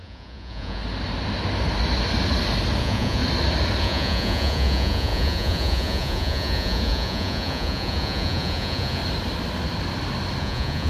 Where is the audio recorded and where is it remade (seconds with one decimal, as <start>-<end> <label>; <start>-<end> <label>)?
0.0-0.8 remade; 0.8-2.8 recorded; 2.8-3.2 remade; 3.2-3.8 recorded; 3.8-9.0 remade; 9.0-10.4 recorded; 10.4-10.9 remade